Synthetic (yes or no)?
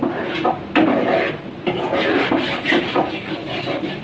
no